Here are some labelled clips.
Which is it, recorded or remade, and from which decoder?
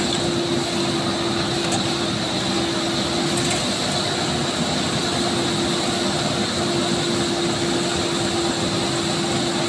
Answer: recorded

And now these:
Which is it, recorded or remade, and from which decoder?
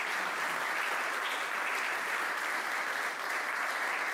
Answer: recorded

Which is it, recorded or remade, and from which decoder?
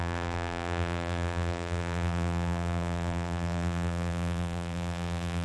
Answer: remade, vocoder, BigVGAN v2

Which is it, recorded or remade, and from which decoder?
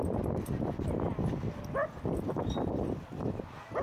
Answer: recorded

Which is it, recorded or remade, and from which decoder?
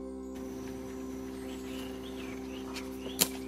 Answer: recorded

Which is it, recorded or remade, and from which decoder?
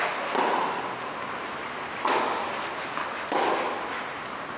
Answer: recorded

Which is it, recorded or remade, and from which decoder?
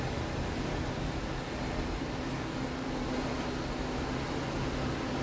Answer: recorded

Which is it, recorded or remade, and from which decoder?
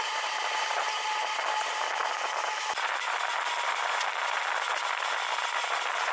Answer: recorded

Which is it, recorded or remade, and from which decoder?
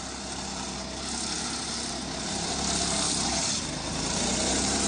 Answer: recorded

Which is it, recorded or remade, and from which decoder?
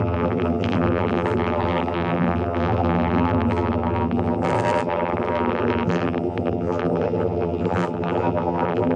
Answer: remade, vocoder, BigVGAN v2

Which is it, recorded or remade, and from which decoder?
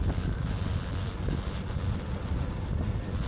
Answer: recorded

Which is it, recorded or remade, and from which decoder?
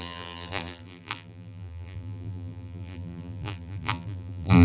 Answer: remade, vocoder, BigVGAN v2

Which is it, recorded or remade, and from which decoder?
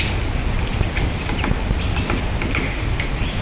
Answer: recorded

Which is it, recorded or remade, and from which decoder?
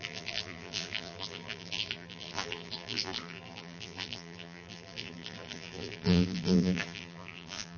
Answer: remade, vocoder, BigVGAN v2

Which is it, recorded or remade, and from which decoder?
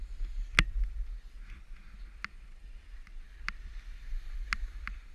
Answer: recorded